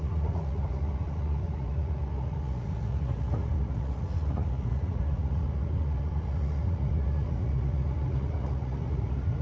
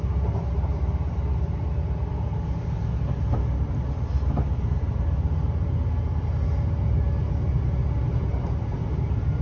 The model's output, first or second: first